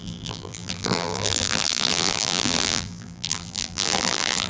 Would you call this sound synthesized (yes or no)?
yes